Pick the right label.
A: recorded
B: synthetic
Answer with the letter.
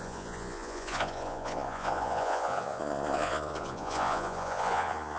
B